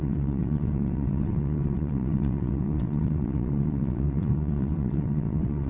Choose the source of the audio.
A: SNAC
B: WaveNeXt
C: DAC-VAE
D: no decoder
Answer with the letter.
B